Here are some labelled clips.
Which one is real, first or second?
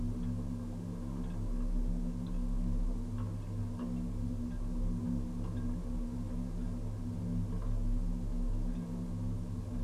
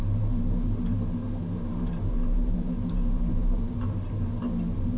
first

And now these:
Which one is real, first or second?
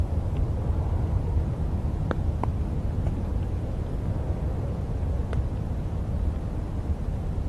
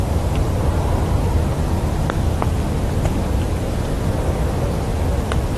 second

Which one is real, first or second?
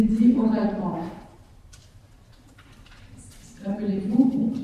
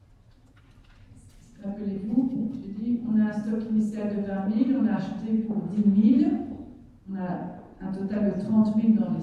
second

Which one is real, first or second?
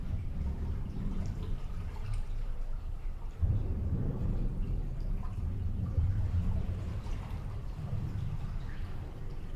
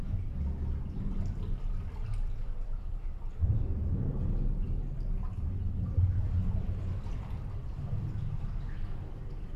second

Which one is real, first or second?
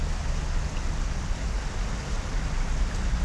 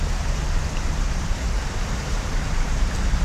first